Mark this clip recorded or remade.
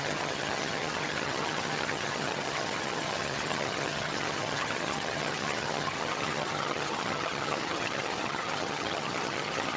remade